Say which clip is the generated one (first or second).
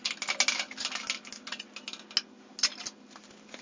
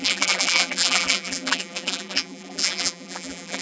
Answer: second